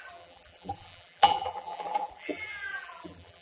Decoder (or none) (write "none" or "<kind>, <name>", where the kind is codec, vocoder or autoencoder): vocoder, BigVGAN v2